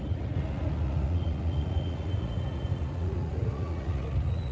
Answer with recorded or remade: remade